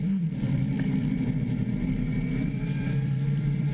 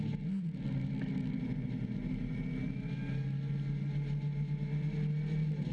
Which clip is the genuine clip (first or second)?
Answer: second